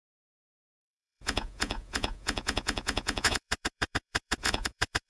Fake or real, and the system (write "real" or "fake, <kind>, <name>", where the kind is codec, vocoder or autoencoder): fake, vocoder, Vocos